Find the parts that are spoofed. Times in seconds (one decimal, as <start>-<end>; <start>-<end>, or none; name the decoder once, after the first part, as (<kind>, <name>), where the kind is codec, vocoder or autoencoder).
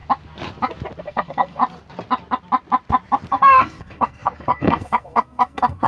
1.0-1.6 (codec, SNAC); 3.3-5.9